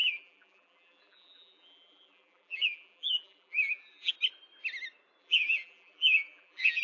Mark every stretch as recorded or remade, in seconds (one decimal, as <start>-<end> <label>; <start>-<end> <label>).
0.0-4.1 remade; 4.1-5.2 recorded; 5.2-6.8 remade

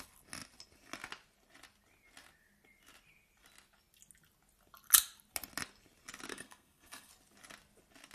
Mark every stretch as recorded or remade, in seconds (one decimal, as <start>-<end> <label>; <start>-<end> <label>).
0.0-6.3 recorded; 6.3-7.1 remade; 7.1-8.1 recorded

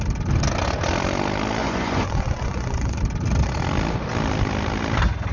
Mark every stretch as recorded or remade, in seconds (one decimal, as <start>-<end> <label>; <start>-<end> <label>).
0.0-1.6 recorded; 1.6-3.0 remade; 3.0-5.3 recorded

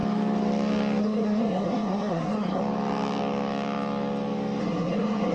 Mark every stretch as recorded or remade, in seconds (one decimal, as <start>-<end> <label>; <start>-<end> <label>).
0.0-1.0 recorded; 1.0-2.6 remade; 2.6-4.6 recorded; 4.6-5.3 remade

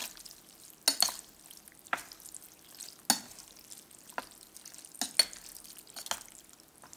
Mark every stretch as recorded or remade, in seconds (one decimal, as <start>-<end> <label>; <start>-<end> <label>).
0.0-7.0 recorded